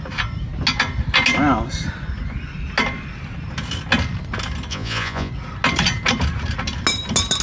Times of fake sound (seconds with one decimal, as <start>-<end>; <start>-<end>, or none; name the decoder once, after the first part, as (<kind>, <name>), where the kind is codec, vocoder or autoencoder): 4.7-5.3 (vocoder, Vocos)